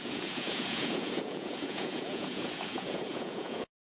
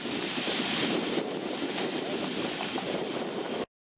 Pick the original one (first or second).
second